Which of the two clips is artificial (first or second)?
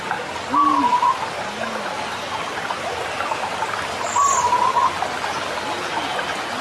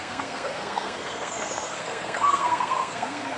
second